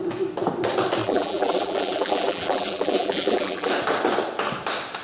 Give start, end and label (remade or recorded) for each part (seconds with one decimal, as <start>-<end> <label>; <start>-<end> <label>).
0.0-1.0 recorded; 1.0-3.7 remade; 3.7-5.0 recorded